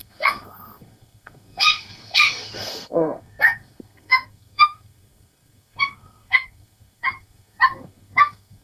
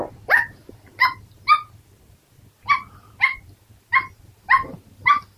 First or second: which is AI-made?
first